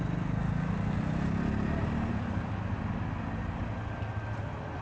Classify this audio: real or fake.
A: real